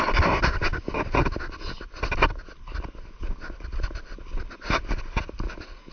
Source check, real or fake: real